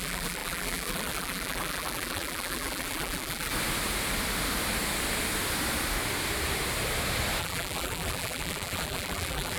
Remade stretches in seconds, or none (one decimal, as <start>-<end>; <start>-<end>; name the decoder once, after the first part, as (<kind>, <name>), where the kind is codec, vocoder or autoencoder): 0.0-3.5 (vocoder, BigVGAN v2); 7.4-9.6